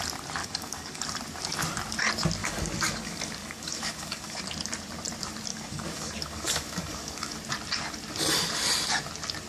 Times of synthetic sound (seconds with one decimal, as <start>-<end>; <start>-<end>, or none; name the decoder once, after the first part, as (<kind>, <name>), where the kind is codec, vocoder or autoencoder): 0.4-1.0 (codec, DAC); 2.4-4.4; 5.5-7.4

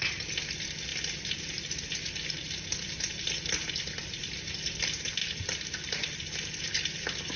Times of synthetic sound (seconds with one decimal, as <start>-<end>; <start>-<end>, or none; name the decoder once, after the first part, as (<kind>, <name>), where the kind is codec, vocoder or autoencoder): 5.2-6.3 (vocoder, BigVGAN v2)